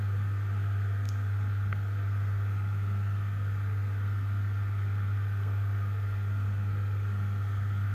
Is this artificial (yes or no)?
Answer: yes